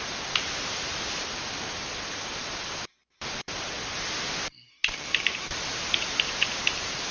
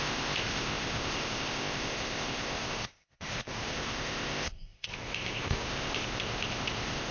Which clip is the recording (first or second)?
first